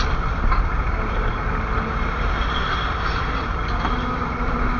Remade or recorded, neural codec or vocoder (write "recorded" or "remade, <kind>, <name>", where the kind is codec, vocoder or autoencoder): recorded